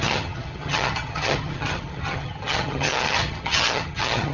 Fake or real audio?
fake